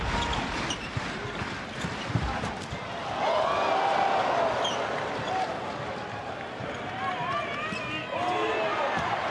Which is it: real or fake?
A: real